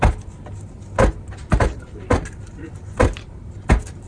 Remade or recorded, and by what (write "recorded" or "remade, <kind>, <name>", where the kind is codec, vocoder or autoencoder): recorded